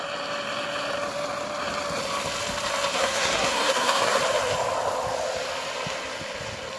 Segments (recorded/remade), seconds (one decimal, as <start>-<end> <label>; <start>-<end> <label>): 0.0-2.9 recorded; 2.9-4.2 remade; 4.2-6.8 recorded